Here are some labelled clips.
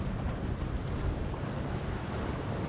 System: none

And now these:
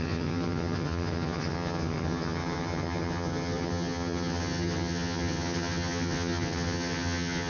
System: vocoder, HiFi-GAN